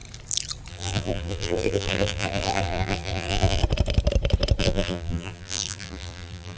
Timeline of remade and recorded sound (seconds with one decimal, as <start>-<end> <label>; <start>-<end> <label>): 0.0-0.7 recorded; 0.7-3.6 remade; 3.6-4.6 recorded; 4.6-6.6 remade